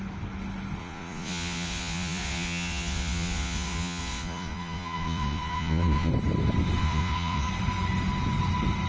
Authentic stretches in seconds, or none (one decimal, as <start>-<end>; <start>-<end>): 0.0-0.8; 6.1-6.8; 7.5-8.9